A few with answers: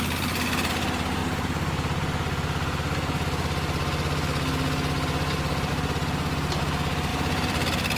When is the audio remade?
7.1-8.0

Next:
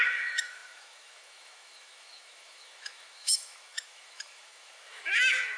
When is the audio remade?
0.0-5.6

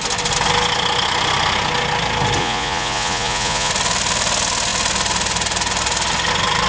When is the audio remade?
2.4-3.7